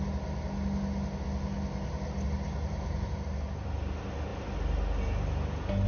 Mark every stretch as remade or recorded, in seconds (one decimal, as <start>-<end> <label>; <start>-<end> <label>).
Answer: 0.0-5.9 recorded